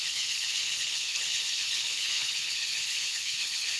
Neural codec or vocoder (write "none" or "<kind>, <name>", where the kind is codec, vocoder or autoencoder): codec, HILCodec